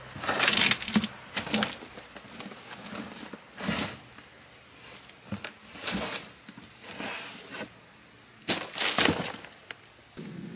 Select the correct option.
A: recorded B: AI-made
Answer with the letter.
A